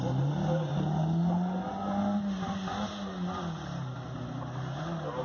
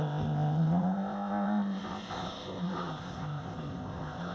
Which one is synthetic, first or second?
second